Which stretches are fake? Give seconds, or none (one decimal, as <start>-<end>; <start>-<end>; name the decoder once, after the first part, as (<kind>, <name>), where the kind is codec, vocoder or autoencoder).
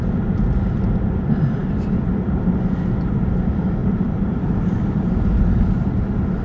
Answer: 3.8-5.4 (vocoder, BigVGAN v2)